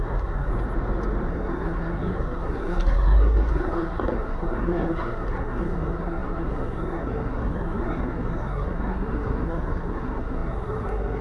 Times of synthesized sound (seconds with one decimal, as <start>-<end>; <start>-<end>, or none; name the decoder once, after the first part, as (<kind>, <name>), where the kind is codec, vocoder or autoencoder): 0.0-0.5 (codec, SNAC); 1.3-11.2